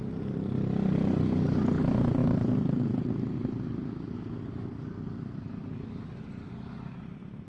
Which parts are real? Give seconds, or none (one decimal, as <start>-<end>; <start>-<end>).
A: 0.0-7.5